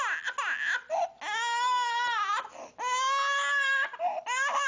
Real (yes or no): yes